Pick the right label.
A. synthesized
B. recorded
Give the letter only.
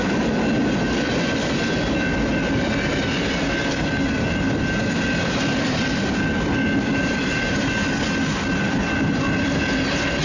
B